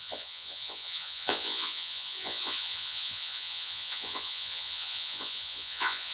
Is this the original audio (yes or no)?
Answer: no